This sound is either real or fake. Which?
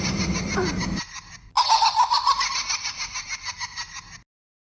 real